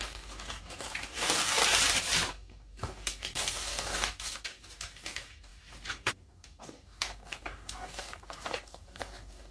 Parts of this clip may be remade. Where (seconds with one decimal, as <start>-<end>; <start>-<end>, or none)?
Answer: 0.0-1.6; 2.3-9.5

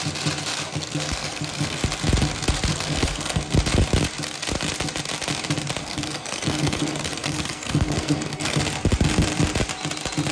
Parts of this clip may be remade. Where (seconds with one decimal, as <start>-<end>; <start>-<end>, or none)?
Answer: 0.5-1.8; 2.7-3.4; 5.8-8.6